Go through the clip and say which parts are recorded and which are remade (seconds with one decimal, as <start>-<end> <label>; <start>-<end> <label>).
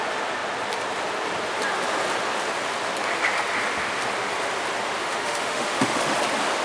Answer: 0.0-5.0 recorded; 5.0-6.1 remade; 6.1-6.6 recorded